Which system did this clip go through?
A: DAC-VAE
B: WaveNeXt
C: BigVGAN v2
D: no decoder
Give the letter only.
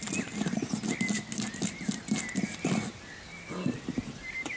D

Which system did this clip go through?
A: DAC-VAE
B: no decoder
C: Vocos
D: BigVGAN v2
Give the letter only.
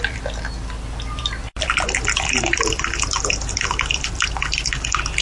D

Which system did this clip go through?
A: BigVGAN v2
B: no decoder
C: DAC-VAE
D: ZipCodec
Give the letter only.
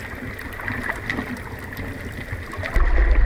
B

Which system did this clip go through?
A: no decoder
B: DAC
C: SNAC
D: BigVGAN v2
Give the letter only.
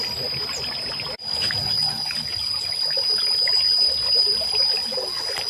A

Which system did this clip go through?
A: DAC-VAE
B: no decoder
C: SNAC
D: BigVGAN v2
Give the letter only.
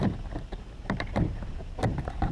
D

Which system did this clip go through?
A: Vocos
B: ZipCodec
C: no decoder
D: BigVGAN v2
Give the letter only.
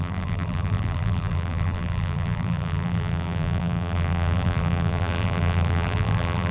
D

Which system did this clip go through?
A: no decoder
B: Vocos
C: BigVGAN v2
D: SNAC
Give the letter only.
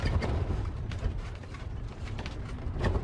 C